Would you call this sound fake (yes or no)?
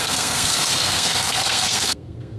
yes